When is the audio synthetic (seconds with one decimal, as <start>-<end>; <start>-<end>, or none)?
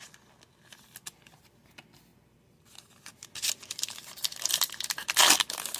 none